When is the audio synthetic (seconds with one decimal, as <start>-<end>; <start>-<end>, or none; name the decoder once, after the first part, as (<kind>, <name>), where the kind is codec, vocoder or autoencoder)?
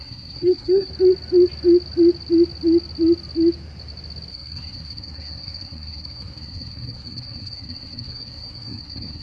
0.0-0.9 (codec, SNAC); 4.3-9.2